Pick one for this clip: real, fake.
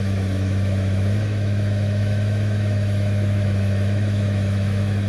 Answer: fake